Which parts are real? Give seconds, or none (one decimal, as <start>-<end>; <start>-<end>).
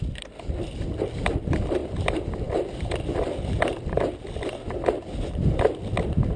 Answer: 0.0-6.4